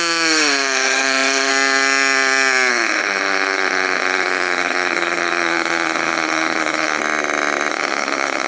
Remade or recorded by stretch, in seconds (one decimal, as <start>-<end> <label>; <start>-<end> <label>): 0.0-1.5 remade; 1.5-2.7 recorded; 2.7-7.0 remade; 7.0-7.7 recorded; 7.7-8.5 remade